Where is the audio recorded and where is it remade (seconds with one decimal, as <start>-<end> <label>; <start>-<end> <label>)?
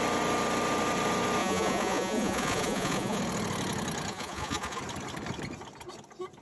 0.0-1.4 recorded; 1.4-3.2 remade; 3.2-4.1 recorded; 4.1-4.8 remade; 4.8-6.4 recorded